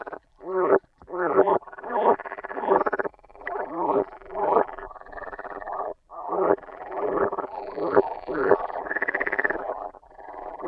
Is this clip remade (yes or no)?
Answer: yes